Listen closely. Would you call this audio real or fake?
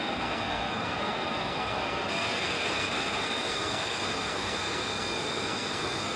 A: fake